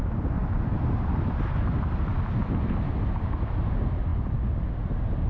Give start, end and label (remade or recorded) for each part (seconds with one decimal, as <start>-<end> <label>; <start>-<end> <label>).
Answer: 0.0-5.3 recorded